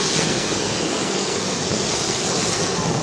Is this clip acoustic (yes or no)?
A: no